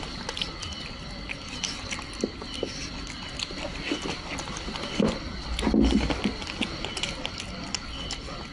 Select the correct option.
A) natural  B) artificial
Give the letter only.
A